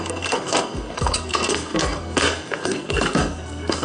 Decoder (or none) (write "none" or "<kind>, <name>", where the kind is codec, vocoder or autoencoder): codec, SNAC